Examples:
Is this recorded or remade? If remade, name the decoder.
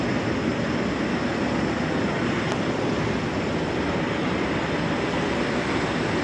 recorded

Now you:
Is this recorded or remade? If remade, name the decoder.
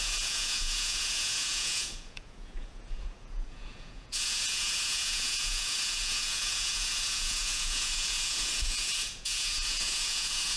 remade, vocoder, Vocos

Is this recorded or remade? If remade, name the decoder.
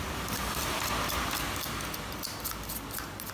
remade, vocoder, BigVGAN v2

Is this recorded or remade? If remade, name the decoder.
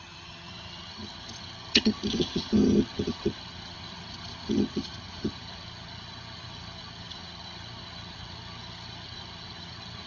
remade, vocoder, HiFi-GAN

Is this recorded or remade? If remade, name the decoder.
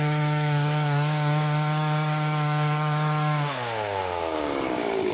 remade, codec, DAC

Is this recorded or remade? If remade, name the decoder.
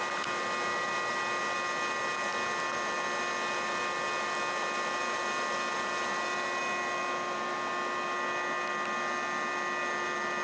recorded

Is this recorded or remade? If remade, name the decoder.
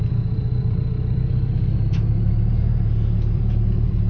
remade, vocoder, BigVGAN v2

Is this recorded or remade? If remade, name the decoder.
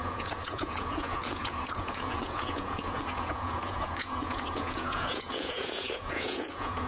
remade, vocoder, Vocos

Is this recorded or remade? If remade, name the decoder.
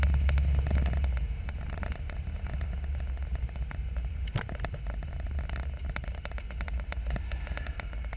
recorded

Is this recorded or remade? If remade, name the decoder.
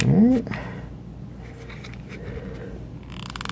recorded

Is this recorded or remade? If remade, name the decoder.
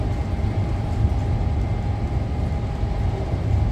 recorded